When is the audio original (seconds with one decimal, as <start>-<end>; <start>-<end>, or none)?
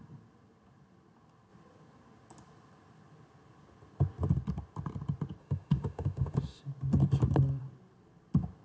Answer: 0.0-5.4; 6.6-8.6